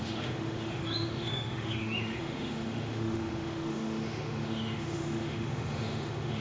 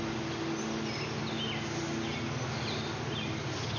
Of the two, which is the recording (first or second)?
second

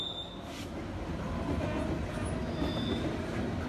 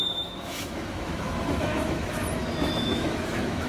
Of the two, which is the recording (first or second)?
first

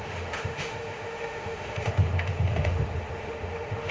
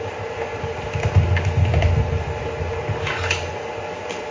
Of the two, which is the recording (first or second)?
second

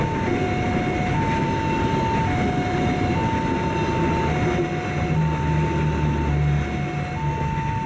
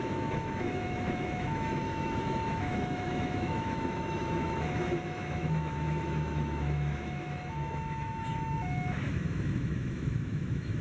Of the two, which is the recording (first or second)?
first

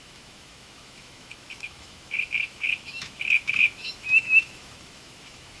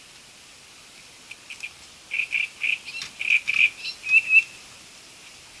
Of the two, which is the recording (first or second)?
second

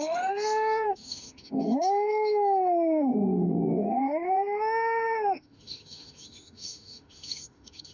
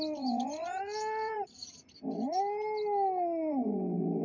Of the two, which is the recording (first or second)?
second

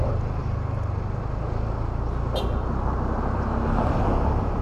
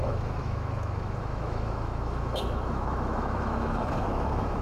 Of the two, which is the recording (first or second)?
first